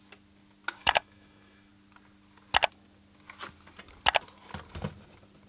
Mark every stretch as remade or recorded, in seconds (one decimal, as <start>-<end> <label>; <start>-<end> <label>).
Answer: 0.0-0.8 recorded; 0.8-1.7 remade; 1.7-5.5 recorded